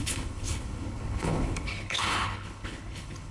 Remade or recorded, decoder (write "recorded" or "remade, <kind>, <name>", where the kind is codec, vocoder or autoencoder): remade, codec, HILCodec